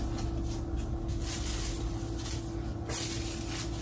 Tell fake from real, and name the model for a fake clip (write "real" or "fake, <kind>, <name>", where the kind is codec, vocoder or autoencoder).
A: real